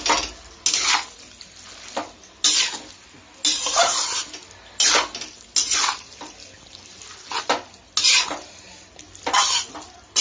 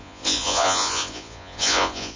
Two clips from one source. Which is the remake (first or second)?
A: second